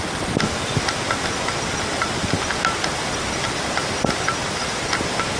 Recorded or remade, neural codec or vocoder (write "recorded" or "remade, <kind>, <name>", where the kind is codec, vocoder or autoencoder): recorded